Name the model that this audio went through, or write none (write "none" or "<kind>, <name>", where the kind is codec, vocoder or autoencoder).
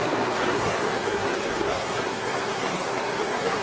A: codec, SNAC